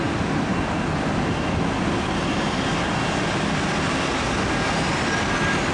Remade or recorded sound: recorded